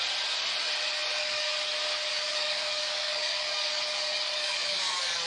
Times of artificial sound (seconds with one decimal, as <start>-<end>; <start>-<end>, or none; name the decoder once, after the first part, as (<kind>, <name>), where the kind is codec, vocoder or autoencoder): 1.2-1.7 (codec, DAC); 2.1-5.3